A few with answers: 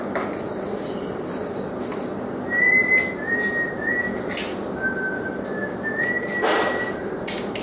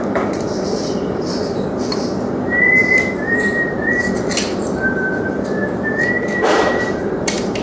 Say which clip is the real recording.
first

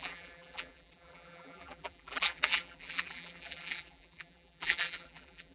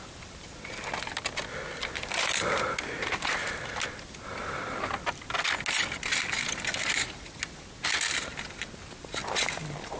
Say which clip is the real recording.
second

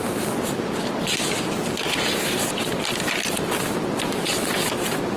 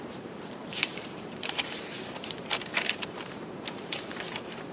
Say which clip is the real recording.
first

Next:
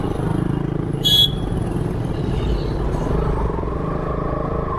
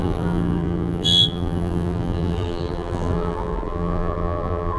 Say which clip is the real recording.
first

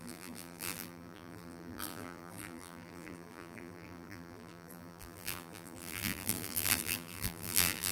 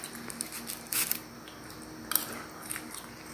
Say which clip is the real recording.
second